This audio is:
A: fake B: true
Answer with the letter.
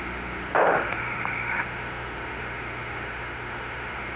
A